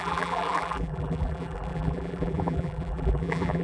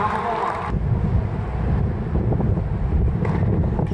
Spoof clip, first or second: first